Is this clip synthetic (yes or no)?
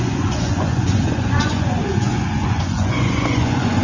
yes